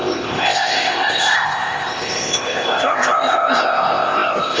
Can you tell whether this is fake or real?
fake